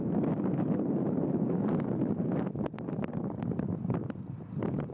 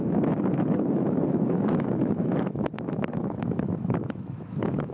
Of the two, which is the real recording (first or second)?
first